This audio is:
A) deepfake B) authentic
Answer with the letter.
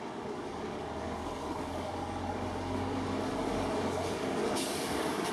A